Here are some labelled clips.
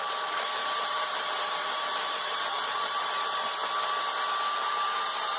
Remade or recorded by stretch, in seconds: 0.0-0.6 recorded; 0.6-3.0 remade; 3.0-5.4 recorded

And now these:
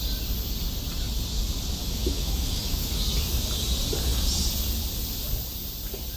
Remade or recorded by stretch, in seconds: 0.0-1.8 recorded; 1.8-2.9 remade; 2.9-6.2 recorded

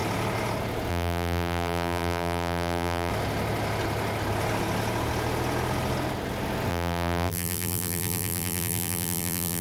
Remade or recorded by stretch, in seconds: 0.0-0.9 recorded; 0.9-3.1 remade; 3.1-6.7 recorded; 6.7-9.6 remade

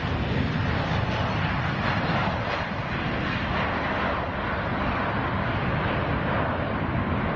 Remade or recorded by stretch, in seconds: 0.0-7.4 recorded

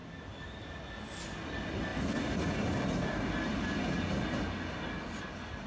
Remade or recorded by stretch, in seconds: 0.0-5.7 recorded

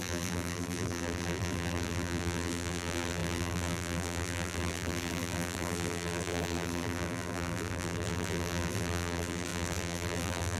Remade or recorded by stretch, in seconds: 0.0-10.6 remade

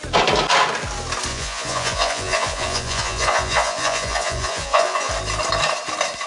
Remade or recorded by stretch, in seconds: 0.0-1.3 recorded; 1.3-5.1 remade; 5.1-6.3 recorded

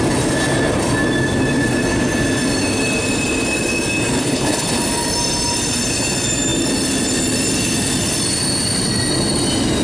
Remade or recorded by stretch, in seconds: 0.0-4.2 recorded; 4.2-4.8 remade; 4.8-9.8 recorded